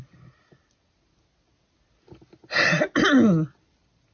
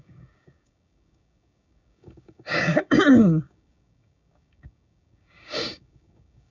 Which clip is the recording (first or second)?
first